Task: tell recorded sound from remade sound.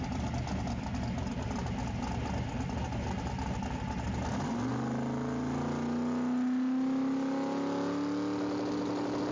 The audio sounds recorded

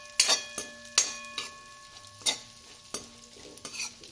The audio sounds recorded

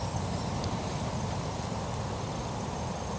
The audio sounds recorded